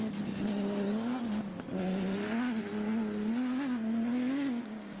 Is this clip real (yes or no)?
yes